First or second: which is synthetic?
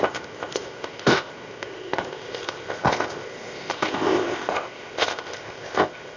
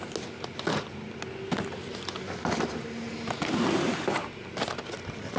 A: first